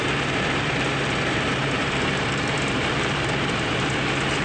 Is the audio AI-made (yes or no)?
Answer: yes